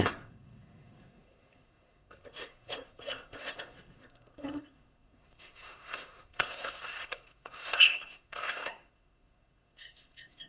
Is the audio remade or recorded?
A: remade